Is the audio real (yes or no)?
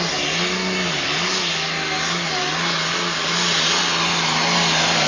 yes